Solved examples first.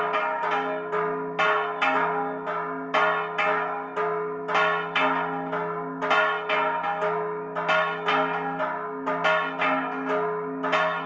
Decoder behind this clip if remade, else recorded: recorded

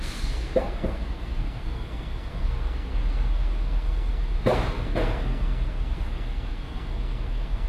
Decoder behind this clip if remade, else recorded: remade, codec, SNAC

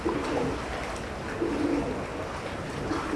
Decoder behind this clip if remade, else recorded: recorded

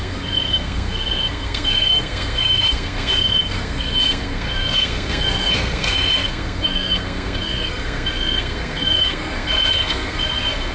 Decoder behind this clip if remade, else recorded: remade, codec, SNAC